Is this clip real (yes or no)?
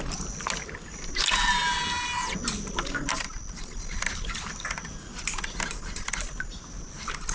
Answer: yes